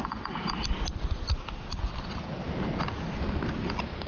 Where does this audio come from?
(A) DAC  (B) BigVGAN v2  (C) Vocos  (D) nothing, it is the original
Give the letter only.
D